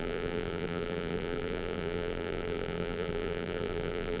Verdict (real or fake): fake